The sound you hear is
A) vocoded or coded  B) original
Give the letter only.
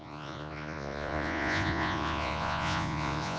A